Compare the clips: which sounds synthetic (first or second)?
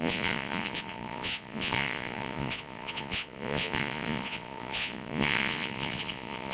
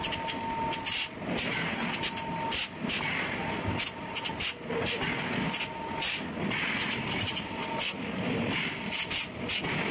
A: first